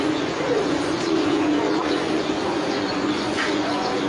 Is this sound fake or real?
fake